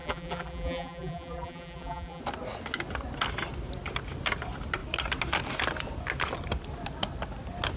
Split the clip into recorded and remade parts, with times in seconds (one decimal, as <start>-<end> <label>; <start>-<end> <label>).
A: 0.0-2.2 remade; 2.2-7.8 recorded

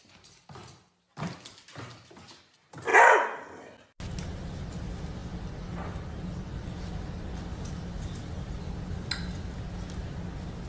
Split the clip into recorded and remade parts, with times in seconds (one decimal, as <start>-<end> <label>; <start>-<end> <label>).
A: 0.0-10.7 recorded

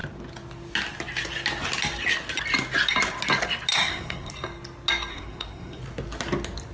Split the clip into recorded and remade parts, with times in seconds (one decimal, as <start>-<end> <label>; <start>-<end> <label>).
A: 0.0-3.7 recorded; 3.7-4.3 remade; 4.3-5.1 recorded; 5.1-5.8 remade; 5.8-6.7 recorded